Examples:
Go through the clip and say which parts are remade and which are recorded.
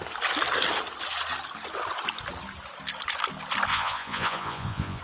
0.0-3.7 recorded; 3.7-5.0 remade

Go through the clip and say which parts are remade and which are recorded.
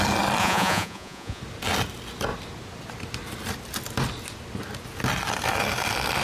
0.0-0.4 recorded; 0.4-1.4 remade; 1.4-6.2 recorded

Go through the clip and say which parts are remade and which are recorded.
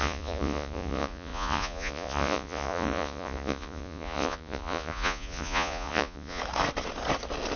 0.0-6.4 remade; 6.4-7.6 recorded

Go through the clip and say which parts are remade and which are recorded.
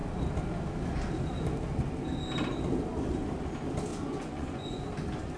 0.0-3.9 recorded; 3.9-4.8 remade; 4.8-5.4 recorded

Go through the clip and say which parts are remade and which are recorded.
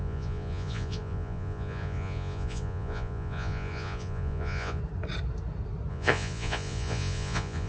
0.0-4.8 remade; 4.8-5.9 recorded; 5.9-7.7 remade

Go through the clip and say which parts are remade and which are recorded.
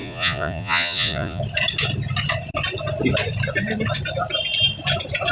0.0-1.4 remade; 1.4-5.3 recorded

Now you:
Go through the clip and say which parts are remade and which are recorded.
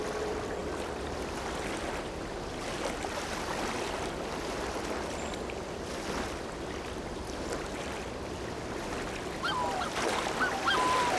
0.0-11.2 recorded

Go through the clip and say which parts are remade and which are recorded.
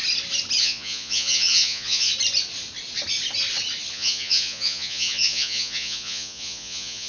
0.0-0.6 recorded; 0.6-2.1 remade; 2.1-3.9 recorded; 3.9-7.1 remade